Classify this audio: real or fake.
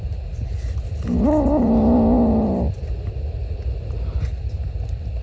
real